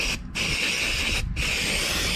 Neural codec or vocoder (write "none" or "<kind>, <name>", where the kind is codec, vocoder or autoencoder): none